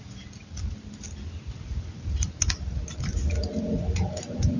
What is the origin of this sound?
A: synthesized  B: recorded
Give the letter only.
B